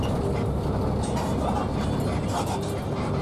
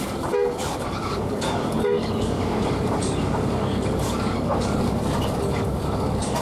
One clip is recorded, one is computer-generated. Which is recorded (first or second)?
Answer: first